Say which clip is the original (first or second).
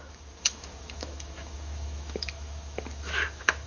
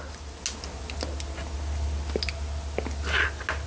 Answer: second